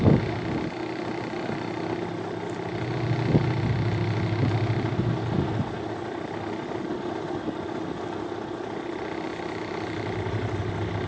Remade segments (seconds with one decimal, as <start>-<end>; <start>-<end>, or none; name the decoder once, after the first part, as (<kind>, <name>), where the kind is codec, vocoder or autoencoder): none